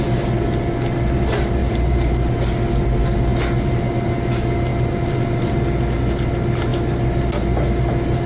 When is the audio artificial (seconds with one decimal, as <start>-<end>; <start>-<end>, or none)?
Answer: 1.6-2.3